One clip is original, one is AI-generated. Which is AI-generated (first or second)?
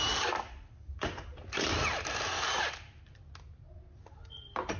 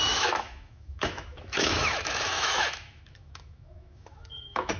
second